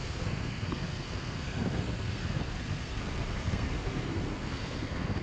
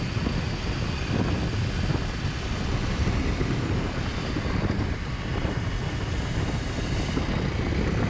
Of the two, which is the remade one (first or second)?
first